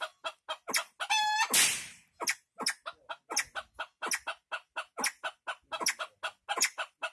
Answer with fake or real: real